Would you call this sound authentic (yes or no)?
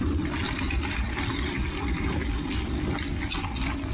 yes